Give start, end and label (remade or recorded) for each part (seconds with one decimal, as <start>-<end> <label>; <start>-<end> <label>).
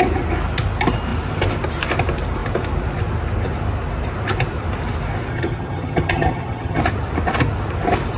0.0-5.3 recorded; 5.3-6.8 remade; 6.8-8.2 recorded